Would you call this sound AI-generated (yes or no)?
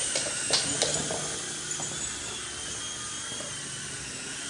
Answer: no